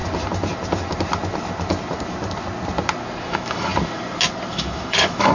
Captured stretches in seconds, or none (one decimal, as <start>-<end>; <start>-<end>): 0.0-3.2; 3.7-4.5